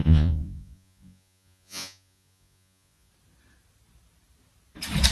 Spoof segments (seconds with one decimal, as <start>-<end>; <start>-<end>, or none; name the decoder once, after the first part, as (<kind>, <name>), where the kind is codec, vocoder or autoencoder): 0.0-3.1 (vocoder, Vocos)